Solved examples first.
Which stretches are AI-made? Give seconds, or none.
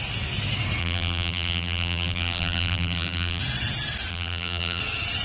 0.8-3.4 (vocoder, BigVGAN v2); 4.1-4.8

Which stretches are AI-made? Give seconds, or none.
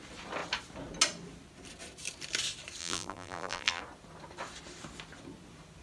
2.8-3.8 (vocoder, BigVGAN v2)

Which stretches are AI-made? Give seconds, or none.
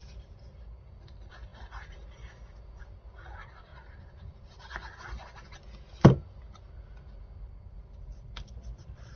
0.0-1.5 (vocoder, BigVGAN v2); 2.8-3.7; 7.8-9.2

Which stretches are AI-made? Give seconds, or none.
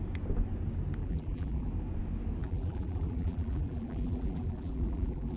1.0-1.7 (vocoder, BigVGAN v2); 2.4-5.4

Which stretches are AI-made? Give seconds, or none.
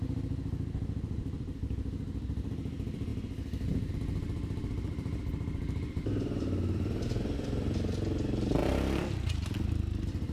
0.0-10.3 (vocoder, BigVGAN v2)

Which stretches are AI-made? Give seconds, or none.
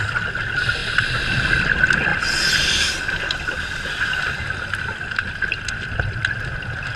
none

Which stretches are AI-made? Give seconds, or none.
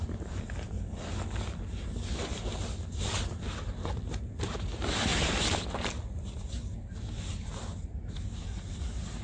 none